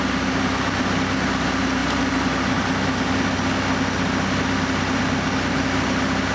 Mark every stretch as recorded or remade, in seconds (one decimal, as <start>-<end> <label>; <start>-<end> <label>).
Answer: 0.0-6.3 recorded